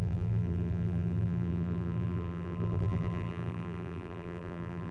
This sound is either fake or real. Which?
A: fake